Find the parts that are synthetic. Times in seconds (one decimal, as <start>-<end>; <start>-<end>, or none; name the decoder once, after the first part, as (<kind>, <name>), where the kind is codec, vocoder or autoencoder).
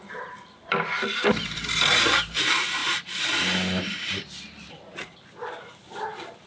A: 0.0-6.5 (vocoder, BigVGAN v2)